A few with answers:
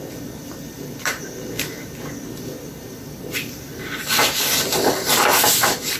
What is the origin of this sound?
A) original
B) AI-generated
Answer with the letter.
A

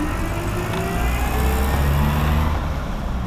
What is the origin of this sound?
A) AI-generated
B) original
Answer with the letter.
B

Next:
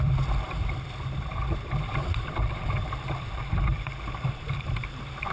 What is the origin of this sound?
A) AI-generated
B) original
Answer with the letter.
A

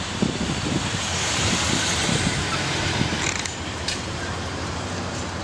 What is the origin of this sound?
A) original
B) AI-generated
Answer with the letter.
B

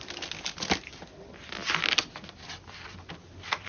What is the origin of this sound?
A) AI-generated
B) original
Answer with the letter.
B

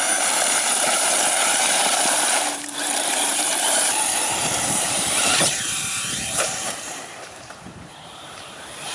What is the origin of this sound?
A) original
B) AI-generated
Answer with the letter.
B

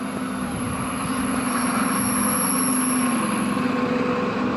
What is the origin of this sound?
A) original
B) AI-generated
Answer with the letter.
A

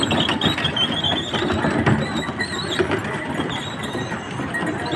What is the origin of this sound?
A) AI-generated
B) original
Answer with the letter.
B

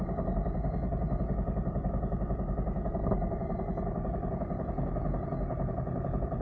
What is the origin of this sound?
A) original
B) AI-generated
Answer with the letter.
A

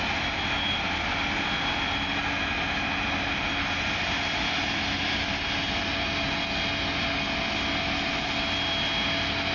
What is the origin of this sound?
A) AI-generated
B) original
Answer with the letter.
B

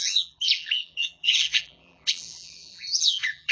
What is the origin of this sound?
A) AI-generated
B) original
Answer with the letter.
A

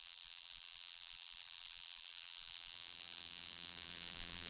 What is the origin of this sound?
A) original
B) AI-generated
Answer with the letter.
B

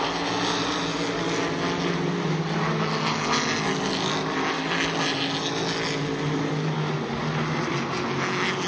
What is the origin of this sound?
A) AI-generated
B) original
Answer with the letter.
B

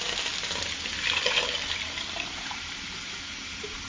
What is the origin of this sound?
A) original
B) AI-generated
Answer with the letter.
B